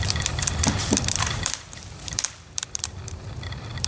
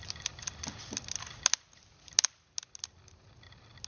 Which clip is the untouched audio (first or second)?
second